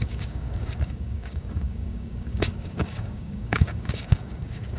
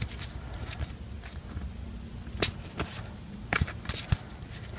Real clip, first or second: second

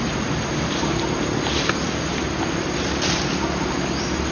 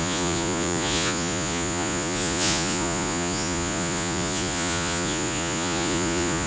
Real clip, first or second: first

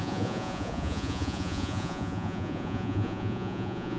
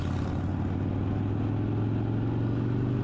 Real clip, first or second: second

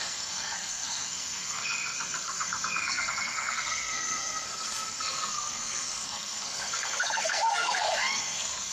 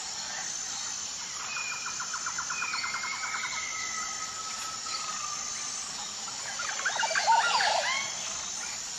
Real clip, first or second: second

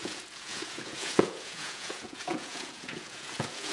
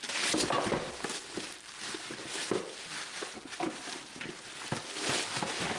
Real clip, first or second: second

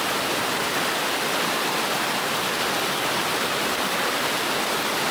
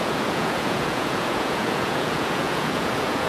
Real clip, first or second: first